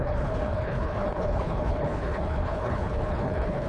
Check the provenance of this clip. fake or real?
fake